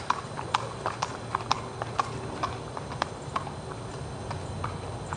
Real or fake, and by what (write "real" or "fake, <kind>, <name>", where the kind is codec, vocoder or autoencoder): real